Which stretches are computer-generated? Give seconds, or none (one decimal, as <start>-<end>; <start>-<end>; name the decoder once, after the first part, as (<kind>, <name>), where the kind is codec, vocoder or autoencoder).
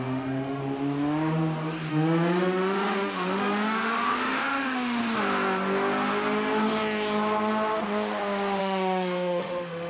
0.0-0.6 (autoencoder, DAC-VAE); 1.9-5.0; 8.6-9.9